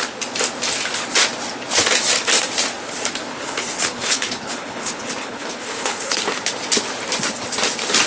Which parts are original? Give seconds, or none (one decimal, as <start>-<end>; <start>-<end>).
0.0-3.3; 6.4-8.1